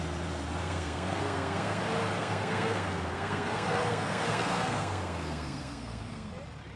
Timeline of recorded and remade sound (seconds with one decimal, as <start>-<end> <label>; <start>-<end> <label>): 0.0-0.6 recorded; 0.6-1.8 remade; 1.8-2.2 recorded; 2.2-6.3 remade; 6.3-6.8 recorded